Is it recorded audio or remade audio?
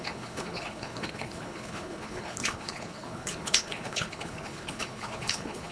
remade